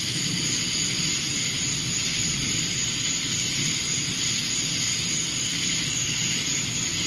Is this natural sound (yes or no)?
yes